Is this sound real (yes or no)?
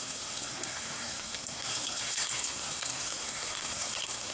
no